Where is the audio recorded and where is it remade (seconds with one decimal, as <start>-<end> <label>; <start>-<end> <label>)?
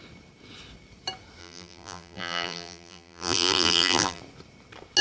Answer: 0.0-1.4 recorded; 1.4-4.2 remade; 4.2-5.0 recorded